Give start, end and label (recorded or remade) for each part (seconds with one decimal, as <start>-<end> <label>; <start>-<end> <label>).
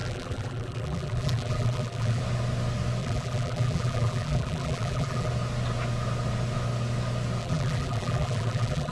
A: 0.0-2.2 remade; 2.2-3.0 recorded; 3.0-5.3 remade; 5.3-7.4 recorded; 7.4-8.9 remade